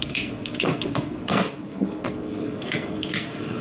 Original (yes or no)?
no